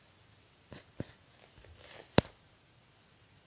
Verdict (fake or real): real